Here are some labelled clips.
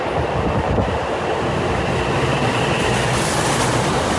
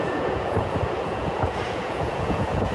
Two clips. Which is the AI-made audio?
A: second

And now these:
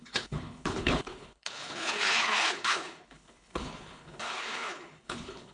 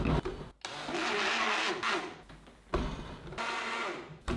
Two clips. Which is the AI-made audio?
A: first